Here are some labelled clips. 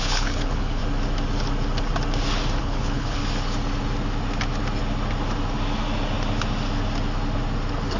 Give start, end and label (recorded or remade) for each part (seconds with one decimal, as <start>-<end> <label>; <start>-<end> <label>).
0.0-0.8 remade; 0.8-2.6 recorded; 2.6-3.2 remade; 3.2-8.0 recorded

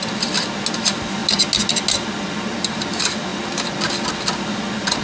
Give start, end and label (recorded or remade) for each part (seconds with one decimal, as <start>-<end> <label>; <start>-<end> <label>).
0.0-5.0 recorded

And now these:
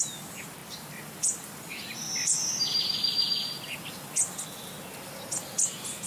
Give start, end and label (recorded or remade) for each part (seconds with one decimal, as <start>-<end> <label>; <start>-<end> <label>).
0.0-6.1 recorded

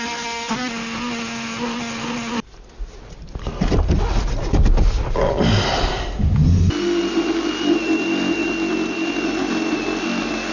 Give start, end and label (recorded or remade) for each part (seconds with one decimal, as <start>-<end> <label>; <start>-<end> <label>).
0.0-10.5 recorded